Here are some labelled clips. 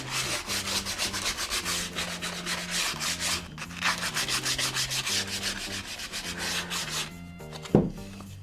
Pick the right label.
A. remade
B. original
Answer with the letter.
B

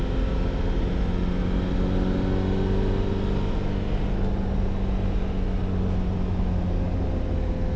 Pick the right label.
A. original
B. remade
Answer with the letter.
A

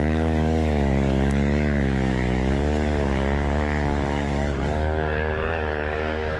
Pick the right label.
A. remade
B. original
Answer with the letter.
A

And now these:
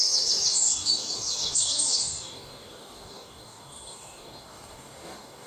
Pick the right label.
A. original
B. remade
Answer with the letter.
B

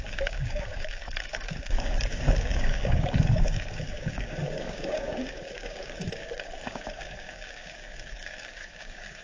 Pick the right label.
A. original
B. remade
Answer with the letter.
B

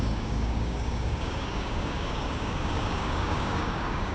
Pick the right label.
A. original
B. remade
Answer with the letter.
B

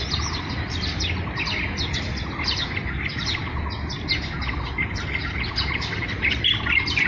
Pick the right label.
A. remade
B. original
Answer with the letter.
B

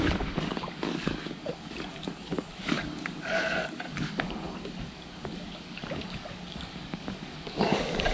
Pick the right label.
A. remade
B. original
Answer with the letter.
A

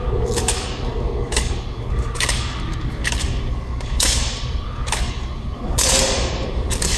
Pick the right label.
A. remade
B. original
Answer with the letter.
A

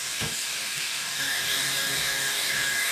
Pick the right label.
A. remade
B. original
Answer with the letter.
A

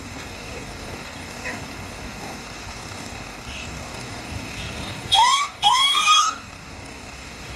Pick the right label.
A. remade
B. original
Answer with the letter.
A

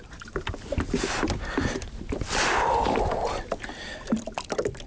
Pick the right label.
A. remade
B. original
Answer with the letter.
B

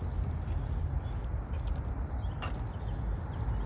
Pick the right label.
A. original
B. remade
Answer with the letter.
A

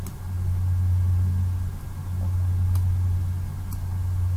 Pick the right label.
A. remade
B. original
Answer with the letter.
B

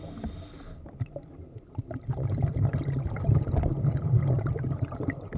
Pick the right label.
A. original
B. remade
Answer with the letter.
A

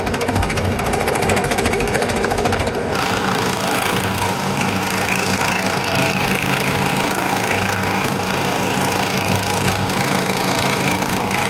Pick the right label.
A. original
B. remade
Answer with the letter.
B